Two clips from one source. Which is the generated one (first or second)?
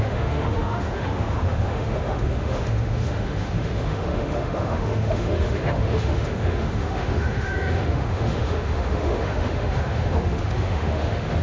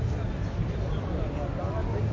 first